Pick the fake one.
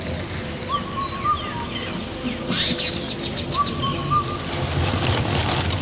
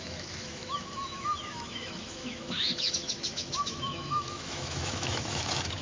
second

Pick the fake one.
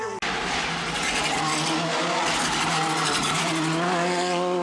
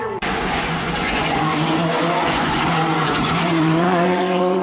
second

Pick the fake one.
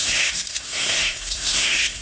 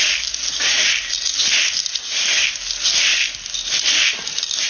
first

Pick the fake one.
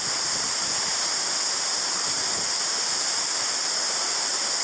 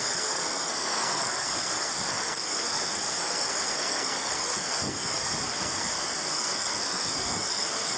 second